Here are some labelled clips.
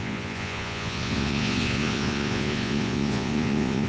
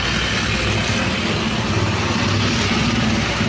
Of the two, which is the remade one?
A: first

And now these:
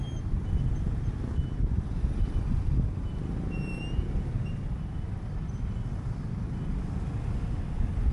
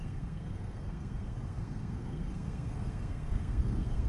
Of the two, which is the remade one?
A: second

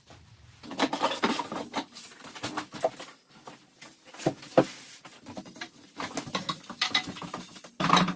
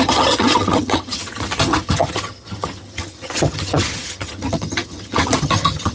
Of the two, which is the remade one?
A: second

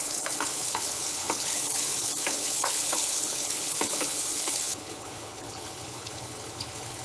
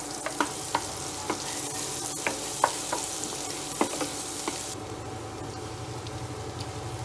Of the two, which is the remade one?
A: first